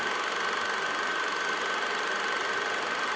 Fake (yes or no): no